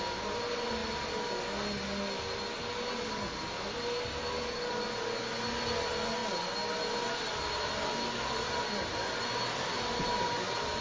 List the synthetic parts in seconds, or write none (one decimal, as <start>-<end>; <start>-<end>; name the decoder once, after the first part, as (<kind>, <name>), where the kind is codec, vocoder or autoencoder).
none